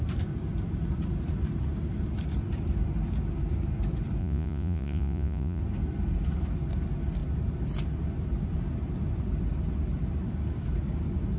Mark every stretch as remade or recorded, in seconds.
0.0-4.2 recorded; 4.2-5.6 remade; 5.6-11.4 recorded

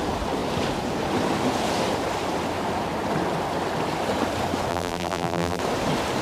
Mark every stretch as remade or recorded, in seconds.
0.0-4.7 recorded; 4.7-5.6 remade; 5.6-6.2 recorded